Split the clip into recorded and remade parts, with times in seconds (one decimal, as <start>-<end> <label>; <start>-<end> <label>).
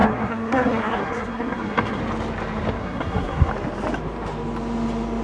0.0-2.0 remade; 2.0-2.8 recorded; 2.8-3.5 remade; 3.5-5.2 recorded